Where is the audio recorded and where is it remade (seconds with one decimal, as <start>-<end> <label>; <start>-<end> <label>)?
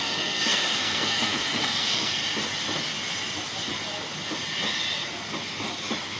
0.0-2.2 remade; 2.2-6.2 recorded